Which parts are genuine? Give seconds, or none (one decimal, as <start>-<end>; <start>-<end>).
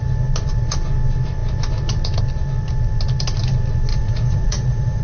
0.0-3.9